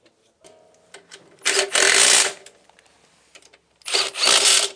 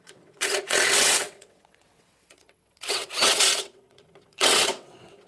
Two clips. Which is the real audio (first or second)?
first